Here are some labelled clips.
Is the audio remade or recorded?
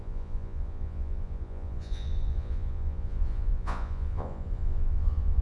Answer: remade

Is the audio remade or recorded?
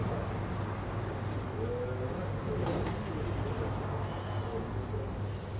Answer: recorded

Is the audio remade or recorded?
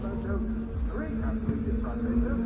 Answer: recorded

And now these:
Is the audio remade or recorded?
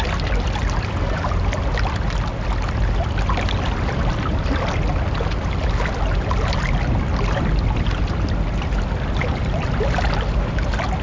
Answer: recorded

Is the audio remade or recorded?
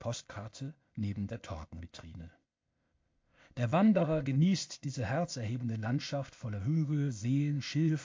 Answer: remade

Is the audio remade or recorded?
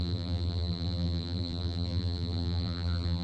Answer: remade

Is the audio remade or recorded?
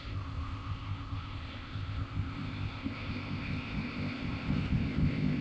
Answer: remade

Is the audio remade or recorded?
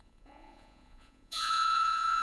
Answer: remade